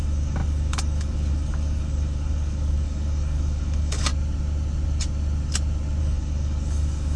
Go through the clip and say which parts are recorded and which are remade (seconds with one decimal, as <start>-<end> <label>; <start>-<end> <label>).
0.0-4.1 remade; 4.1-6.0 recorded; 6.0-7.2 remade